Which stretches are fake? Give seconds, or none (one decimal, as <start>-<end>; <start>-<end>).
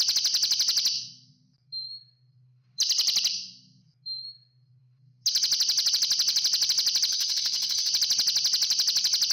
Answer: 7.1-7.9